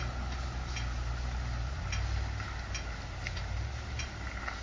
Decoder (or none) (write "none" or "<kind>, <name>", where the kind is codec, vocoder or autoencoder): none